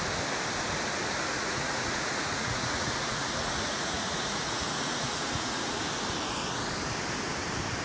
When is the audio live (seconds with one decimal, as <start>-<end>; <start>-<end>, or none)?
0.0-1.3; 5.8-7.8